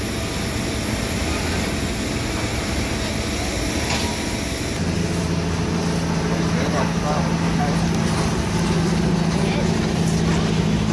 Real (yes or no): yes